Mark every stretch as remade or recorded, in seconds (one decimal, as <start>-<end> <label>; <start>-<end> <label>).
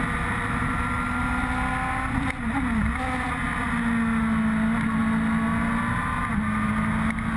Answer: 0.0-7.4 recorded